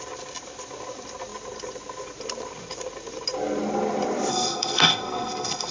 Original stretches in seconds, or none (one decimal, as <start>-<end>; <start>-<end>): 0.0-4.3